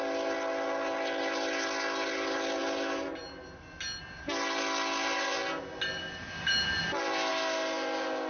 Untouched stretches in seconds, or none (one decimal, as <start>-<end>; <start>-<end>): 0.0-8.3